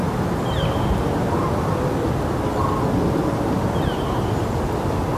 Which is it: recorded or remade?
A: recorded